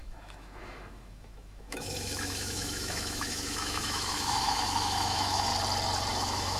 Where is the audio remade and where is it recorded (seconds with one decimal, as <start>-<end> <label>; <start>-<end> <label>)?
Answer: 0.0-5.5 remade; 5.5-6.1 recorded; 6.1-6.6 remade